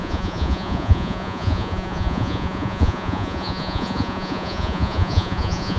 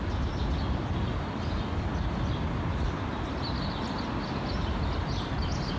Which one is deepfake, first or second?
first